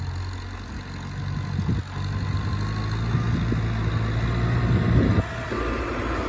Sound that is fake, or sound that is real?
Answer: real